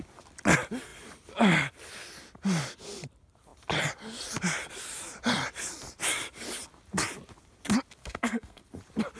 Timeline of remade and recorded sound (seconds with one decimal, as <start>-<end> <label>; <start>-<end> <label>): 0.0-8.0 recorded; 8.0-8.6 remade; 8.6-9.2 recorded